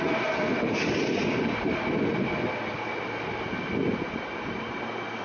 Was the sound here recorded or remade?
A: recorded